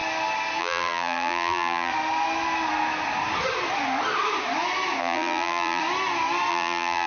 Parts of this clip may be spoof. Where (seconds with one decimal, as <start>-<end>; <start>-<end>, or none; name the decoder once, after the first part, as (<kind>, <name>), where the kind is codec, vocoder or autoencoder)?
0.6-1.9 (vocoder, BigVGAN v2); 5.0-5.8; 6.5-7.1